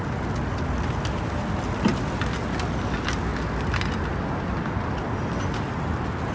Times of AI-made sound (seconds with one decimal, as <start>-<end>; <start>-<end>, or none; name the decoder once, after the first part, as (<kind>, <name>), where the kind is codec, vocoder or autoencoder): none